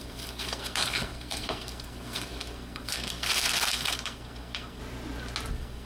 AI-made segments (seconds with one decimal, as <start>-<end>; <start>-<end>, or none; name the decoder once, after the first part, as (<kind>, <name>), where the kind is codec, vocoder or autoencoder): 0.0-4.8 (codec, SNAC); 5.5-5.9

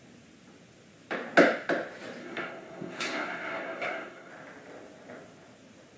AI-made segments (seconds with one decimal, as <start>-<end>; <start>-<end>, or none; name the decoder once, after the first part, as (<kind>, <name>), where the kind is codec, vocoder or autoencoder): 2.2-4.3 (codec, SNAC)

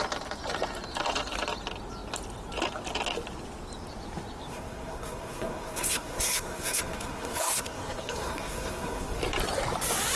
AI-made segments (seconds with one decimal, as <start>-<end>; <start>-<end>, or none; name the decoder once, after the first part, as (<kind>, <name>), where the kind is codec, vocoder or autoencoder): 4.5-9.2 (codec, SNAC)

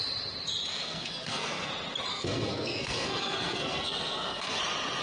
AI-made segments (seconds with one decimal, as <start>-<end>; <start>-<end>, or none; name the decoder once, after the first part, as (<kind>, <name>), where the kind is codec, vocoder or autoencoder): 0.7-1.7 (codec, SNAC); 2.1-4.6

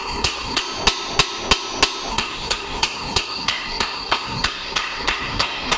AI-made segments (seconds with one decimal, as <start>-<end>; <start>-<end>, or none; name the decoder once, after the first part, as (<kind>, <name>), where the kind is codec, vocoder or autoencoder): 0.0-0.6 (codec, SNAC); 2.1-5.8

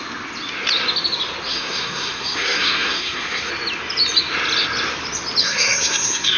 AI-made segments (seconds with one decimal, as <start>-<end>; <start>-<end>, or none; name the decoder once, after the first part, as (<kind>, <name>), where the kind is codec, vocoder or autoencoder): 1.5-3.5 (codec, SNAC); 5.4-6.4